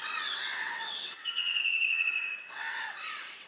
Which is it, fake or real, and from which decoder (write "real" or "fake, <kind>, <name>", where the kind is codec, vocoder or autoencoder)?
fake, vocoder, WaveNeXt